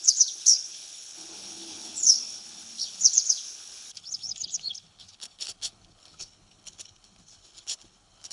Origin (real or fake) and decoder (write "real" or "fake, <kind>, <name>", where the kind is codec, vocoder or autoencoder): fake, codec, HILCodec